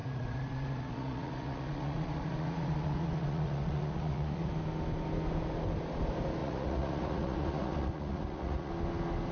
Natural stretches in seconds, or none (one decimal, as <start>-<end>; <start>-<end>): 4.5-6.4; 8.7-9.3

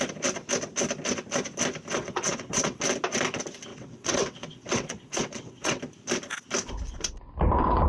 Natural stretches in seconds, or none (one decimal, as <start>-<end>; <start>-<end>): 0.0-2.0; 2.8-3.7; 5.8-7.9

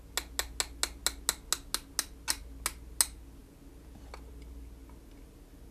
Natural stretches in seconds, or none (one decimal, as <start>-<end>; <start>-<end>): 0.0-5.7

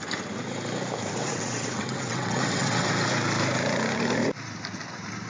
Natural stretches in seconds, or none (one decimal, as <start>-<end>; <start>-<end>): 0.0-1.2; 2.9-5.3

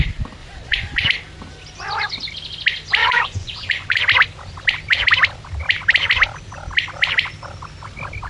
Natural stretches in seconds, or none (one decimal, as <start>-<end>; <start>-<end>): 0.0-0.4; 1.1-3.0; 4.0-8.3

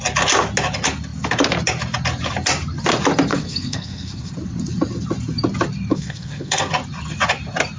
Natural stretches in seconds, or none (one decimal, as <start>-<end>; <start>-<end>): 0.0-3.3; 4.3-5.9; 6.7-7.8

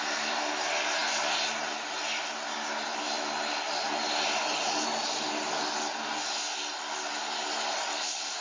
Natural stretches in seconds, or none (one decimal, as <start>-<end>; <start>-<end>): 0.0-8.4